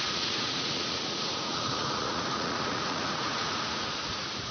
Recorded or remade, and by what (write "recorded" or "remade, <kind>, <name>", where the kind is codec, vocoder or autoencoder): remade, vocoder, Vocos